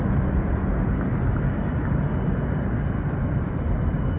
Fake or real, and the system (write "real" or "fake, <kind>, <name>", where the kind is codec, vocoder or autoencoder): real